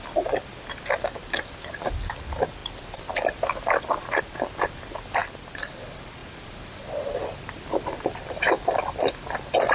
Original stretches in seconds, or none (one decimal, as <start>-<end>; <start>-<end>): 0.0-2.6; 4.2-5.2; 5.7-6.2